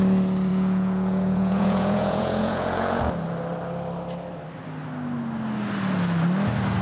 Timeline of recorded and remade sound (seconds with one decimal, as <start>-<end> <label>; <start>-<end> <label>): 0.0-0.5 recorded; 0.5-3.1 remade; 3.1-6.8 recorded